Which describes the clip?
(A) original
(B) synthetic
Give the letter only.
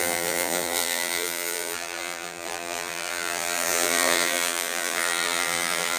B